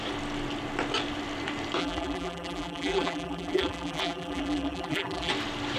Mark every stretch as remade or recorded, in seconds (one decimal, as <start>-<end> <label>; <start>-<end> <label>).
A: 0.0-1.8 recorded; 1.8-5.3 remade; 5.3-5.8 recorded